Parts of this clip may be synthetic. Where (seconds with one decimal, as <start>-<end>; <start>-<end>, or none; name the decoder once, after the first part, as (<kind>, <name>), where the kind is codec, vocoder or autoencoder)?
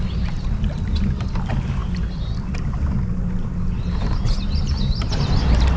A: none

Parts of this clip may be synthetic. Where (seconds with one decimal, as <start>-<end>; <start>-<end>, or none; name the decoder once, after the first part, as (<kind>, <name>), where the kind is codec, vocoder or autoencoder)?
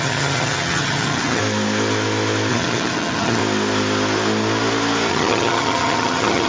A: 0.0-1.4 (vocoder, HiFi-GAN); 2.5-3.4; 5.1-6.5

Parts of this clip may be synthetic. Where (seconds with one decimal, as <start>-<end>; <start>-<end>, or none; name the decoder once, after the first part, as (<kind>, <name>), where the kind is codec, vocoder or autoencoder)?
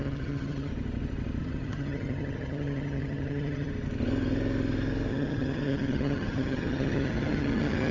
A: 0.0-0.7 (vocoder, HiFi-GAN); 1.4-3.7; 5.1-7.9